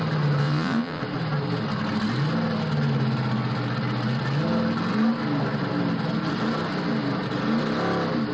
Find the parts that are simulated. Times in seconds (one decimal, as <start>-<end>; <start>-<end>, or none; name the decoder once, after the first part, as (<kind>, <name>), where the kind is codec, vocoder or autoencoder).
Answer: 0.4-1.0 (vocoder, WaveNeXt)